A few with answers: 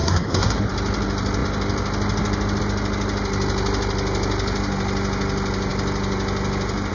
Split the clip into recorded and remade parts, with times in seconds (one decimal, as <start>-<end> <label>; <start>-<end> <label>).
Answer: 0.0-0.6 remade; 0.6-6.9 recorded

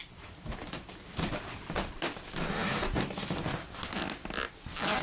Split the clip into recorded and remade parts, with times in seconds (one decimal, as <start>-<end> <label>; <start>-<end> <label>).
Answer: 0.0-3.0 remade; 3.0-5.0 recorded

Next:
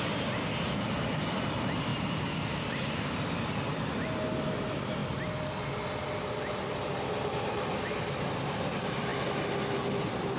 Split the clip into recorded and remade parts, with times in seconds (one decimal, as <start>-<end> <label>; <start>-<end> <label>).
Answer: 0.0-10.4 recorded